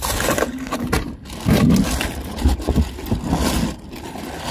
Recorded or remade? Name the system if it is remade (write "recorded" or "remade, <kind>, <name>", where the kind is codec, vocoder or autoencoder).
recorded